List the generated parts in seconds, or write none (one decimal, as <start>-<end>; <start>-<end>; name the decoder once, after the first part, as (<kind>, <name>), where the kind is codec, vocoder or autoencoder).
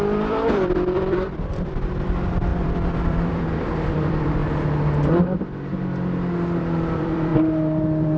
0.0-4.4 (vocoder, BigVGAN v2); 6.6-7.3